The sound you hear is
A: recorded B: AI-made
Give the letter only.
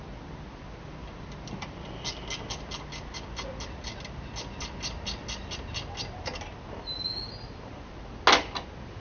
A